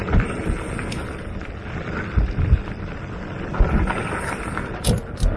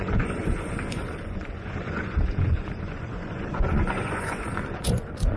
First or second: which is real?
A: first